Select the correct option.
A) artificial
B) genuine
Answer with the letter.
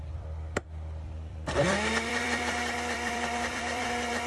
A